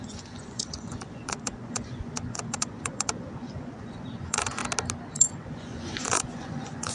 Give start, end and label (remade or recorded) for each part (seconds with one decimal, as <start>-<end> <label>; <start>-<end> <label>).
0.0-4.6 remade; 4.6-5.1 recorded; 5.1-6.9 remade